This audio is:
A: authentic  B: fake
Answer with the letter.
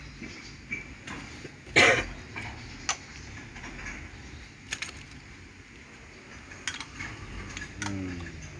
A